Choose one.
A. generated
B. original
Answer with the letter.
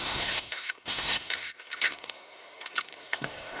A